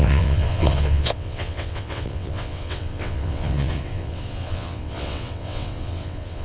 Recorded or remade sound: remade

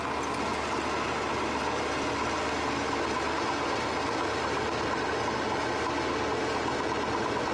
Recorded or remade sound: recorded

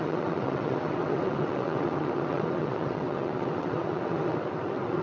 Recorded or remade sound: remade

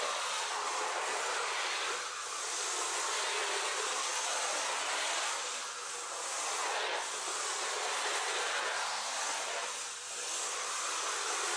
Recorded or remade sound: recorded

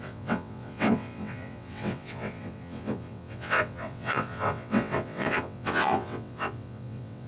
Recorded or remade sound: remade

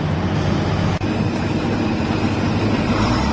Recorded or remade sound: recorded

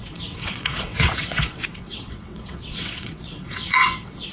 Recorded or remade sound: remade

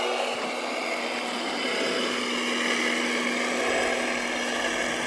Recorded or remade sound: recorded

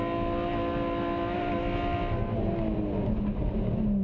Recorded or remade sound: recorded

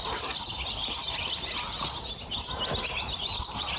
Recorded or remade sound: recorded